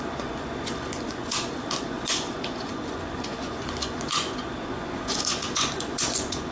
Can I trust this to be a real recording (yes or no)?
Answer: no